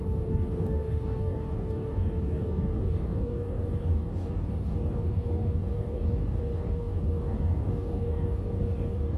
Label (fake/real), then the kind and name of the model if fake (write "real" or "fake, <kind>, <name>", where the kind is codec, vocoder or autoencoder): fake, codec, DAC